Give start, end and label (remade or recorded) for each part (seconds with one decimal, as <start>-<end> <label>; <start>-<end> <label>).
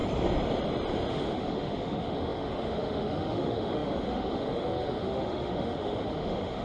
0.0-1.1 recorded; 1.1-6.6 remade